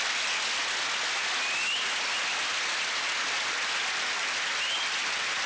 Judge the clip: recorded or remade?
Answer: recorded